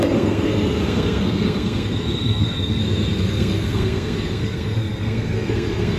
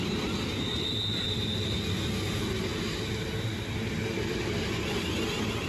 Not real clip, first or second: first